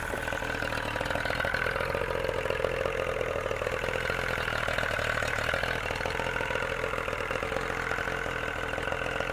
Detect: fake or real real